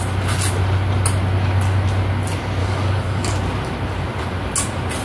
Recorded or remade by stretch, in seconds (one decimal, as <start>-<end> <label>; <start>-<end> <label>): 0.0-2.6 recorded; 2.6-3.3 remade; 3.3-5.0 recorded